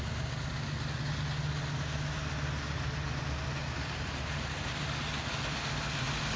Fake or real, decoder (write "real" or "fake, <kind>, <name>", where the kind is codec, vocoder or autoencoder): real